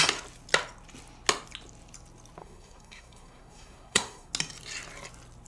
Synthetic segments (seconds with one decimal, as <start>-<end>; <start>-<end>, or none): 2.4-4.3